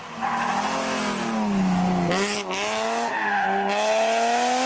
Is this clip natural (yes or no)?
yes